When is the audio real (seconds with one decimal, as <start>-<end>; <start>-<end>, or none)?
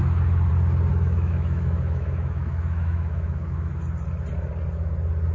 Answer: 0.0-0.9; 3.7-5.3